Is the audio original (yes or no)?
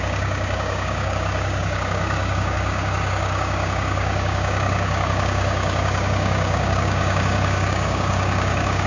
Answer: no